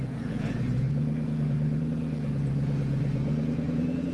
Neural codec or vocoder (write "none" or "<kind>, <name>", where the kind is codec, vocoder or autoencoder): vocoder, Vocos